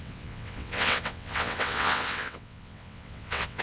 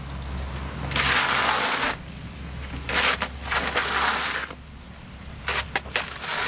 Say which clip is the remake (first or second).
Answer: first